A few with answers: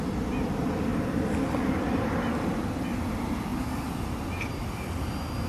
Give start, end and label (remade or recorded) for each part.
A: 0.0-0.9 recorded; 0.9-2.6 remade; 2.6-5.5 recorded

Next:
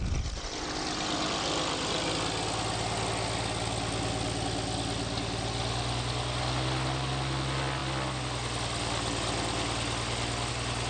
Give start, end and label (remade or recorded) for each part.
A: 0.0-10.9 recorded

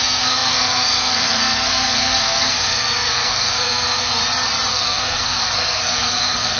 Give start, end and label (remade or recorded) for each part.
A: 0.0-4.2 remade; 4.2-4.7 recorded; 4.7-6.6 remade

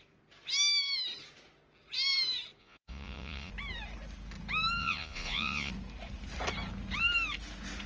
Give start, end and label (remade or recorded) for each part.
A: 0.0-2.6 recorded; 2.6-3.5 remade; 3.5-4.8 recorded; 4.8-5.7 remade; 5.7-7.9 recorded